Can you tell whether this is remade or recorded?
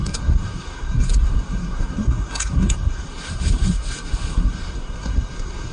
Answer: remade